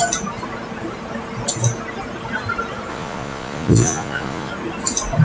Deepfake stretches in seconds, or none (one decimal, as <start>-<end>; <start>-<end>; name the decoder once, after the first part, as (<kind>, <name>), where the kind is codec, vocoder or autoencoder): 2.9-4.5 (vocoder, Vocos)